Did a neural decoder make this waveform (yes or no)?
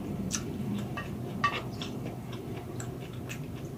yes